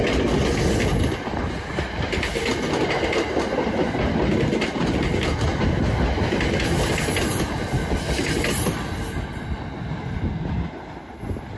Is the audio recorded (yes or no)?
yes